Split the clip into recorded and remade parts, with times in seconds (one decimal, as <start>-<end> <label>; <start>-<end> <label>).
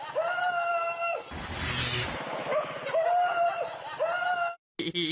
0.0-5.1 recorded